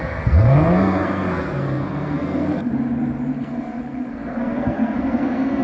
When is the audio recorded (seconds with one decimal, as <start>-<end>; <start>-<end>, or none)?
2.7-3.4